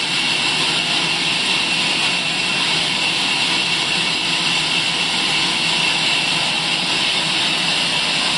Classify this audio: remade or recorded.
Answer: recorded